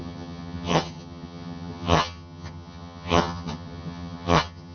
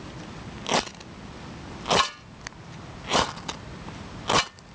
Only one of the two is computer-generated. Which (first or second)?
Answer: first